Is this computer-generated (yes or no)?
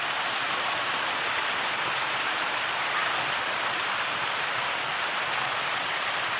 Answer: no